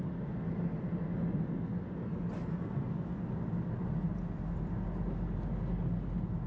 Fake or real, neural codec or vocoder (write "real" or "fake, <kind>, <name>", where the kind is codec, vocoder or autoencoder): real